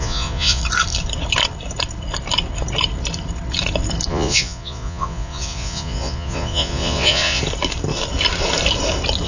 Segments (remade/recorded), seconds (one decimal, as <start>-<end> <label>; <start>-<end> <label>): 0.0-0.6 remade; 0.6-4.1 recorded; 4.1-7.4 remade; 7.4-9.3 recorded